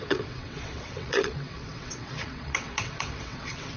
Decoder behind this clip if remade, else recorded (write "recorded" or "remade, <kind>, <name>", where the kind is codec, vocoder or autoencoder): remade, vocoder, WaveNeXt